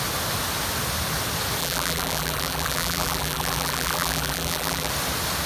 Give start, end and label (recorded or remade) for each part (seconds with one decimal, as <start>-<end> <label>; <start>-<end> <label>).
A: 0.0-1.6 recorded; 1.6-4.9 remade; 4.9-5.5 recorded